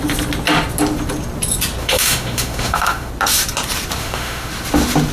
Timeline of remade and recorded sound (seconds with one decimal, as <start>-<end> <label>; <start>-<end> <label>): 0.0-1.8 recorded; 1.8-3.1 remade; 3.1-4.0 recorded; 4.0-4.5 remade; 4.5-5.1 recorded